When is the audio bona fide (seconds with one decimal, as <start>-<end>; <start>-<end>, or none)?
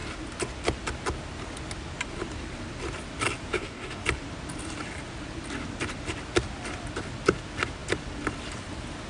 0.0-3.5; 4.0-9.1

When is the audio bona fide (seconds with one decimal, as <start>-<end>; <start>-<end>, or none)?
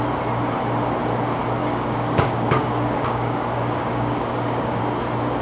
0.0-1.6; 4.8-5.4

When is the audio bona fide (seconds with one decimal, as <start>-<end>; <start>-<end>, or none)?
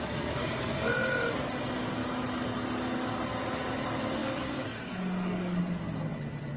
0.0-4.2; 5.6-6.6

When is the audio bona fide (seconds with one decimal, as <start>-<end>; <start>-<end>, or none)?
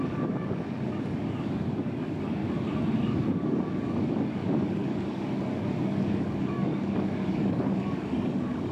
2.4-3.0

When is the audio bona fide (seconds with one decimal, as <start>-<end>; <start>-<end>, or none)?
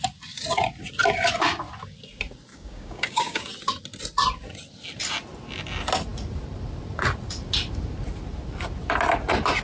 0.0-2.5; 3.4-9.6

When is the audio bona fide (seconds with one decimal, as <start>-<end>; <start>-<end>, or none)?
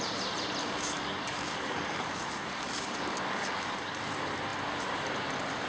0.0-0.6; 4.0-5.7